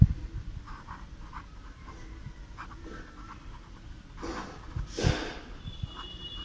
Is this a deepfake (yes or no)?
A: no